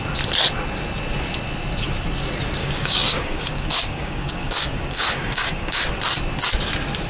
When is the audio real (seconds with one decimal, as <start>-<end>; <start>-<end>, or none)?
0.0-2.6; 5.9-7.1